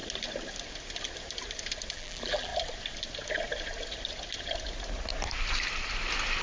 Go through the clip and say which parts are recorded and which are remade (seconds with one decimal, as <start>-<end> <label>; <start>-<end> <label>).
0.0-1.9 recorded; 1.9-2.5 remade; 2.5-6.4 recorded